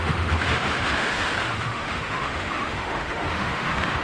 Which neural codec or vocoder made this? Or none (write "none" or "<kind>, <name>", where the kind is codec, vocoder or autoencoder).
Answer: autoencoder, DAC-VAE